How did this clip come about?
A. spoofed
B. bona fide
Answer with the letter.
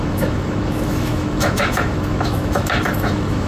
A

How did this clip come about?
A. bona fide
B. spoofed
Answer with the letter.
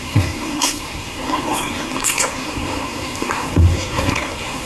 B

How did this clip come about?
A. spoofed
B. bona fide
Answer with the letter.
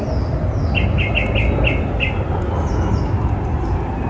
B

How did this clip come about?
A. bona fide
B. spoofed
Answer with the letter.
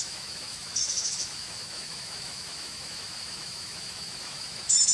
B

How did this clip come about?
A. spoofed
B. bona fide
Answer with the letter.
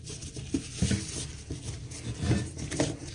B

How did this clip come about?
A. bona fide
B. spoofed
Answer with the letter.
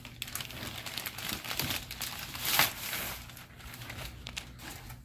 A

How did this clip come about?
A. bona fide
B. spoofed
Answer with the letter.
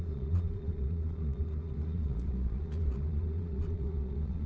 B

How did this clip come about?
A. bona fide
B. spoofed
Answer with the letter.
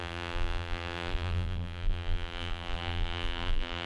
B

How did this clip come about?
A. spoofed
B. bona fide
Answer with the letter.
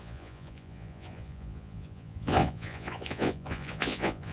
A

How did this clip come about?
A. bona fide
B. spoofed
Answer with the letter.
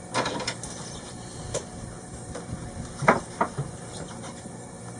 B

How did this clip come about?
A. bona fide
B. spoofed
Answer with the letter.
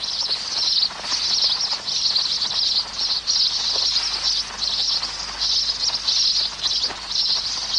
A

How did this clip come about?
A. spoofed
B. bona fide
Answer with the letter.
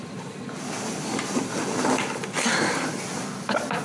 B